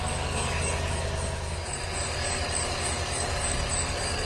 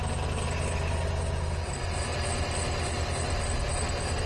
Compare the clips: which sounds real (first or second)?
second